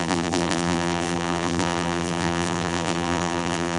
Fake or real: fake